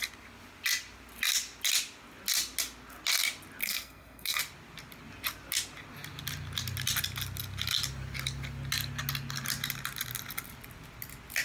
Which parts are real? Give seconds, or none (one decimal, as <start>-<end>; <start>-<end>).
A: 0.0-3.6; 4.4-11.4

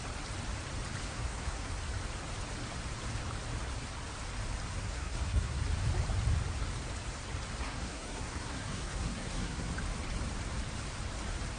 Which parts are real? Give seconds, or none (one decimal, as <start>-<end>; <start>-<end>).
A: 0.0-1.0; 1.7-4.8; 5.6-7.6; 9.7-11.6

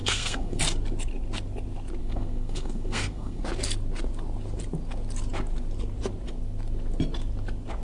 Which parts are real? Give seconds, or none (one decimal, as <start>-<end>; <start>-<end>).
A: 0.6-2.0; 3.4-7.8

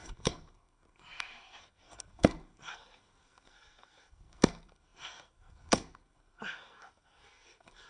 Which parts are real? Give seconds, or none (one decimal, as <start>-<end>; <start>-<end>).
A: none